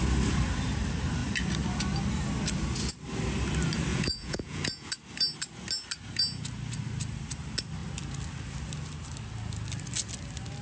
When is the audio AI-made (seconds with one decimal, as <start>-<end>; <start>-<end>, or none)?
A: 3.9-4.9